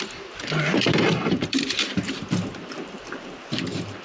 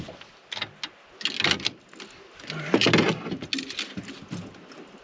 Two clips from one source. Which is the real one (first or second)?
second